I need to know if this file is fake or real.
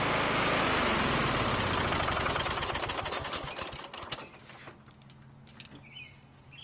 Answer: real